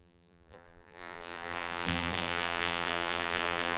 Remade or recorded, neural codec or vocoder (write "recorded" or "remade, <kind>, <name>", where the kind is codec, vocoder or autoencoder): remade, vocoder, BigVGAN v2